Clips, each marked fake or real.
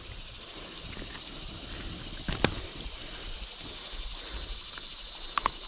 real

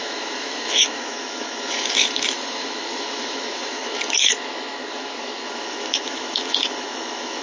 fake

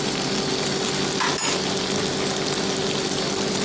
real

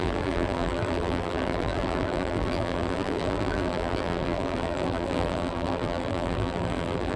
fake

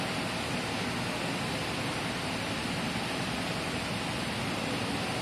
real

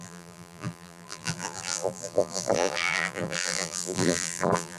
fake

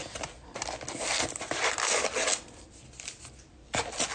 real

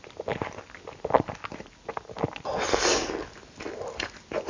real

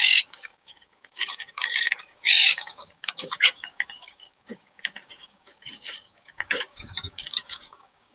fake